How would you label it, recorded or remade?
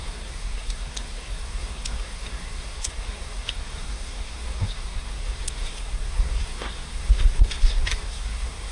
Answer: remade